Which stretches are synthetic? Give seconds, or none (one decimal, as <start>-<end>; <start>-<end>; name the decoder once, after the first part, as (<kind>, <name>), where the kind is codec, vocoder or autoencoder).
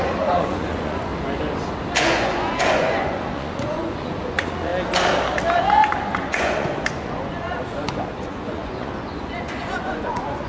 0.0-1.1 (vocoder, Vocos); 2.0-4.7; 5.6-10.5